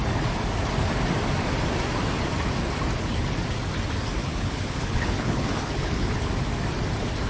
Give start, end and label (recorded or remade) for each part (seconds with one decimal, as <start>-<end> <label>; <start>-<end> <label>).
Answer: 0.0-4.2 recorded; 4.2-6.3 remade; 6.3-7.3 recorded